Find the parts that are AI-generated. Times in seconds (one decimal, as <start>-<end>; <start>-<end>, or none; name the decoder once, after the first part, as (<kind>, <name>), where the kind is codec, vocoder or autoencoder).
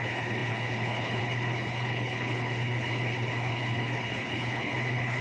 0.0-5.2 (codec, HILCodec)